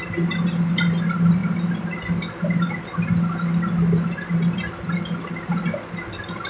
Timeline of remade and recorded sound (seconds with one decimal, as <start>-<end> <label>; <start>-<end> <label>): 0.0-6.5 recorded